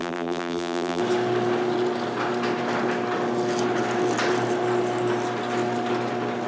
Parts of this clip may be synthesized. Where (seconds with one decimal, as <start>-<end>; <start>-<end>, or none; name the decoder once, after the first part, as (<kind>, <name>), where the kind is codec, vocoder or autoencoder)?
0.0-1.0 (vocoder, BigVGAN v2)